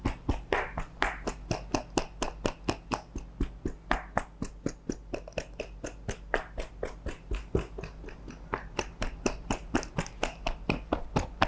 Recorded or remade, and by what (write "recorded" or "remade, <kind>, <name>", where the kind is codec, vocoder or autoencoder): recorded